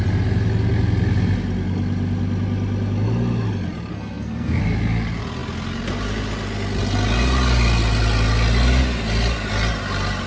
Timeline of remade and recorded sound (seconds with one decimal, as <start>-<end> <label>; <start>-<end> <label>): 0.0-3.9 recorded; 3.9-4.6 remade; 4.6-10.3 recorded